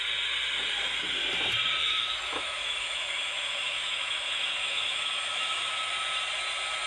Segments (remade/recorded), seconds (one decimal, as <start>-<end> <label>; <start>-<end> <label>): 0.0-1.8 recorded; 1.8-5.9 remade; 5.9-6.9 recorded